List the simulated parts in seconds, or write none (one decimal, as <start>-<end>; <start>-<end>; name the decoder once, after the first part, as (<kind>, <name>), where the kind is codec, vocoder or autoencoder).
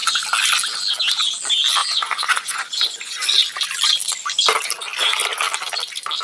1.8-3.2 (vocoder, Vocos)